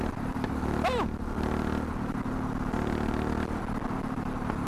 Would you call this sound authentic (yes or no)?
yes